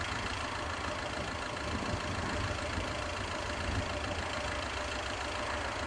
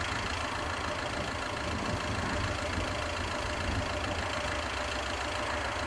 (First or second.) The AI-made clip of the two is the first